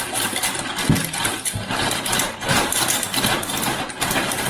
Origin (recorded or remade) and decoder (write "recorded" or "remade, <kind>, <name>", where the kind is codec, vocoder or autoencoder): recorded